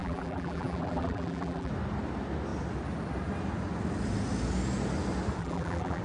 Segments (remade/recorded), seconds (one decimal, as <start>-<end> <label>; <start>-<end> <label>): 0.0-1.7 remade; 1.7-5.4 recorded; 5.4-6.0 remade